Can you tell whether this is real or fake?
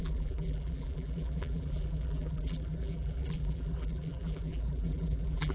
fake